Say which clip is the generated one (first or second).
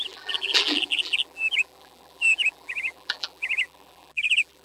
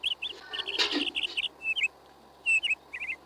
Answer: first